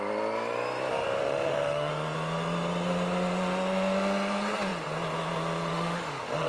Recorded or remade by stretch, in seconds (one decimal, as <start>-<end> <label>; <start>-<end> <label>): 0.0-0.9 recorded; 0.9-1.9 remade; 1.9-5.7 recorded; 5.7-6.5 remade